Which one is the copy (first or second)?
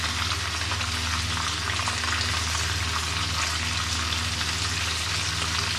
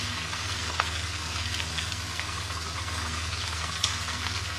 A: second